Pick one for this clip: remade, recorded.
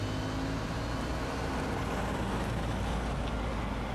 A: recorded